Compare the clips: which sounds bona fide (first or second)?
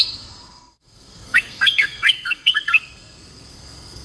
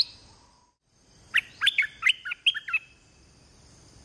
second